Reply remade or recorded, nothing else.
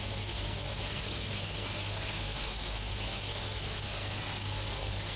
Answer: remade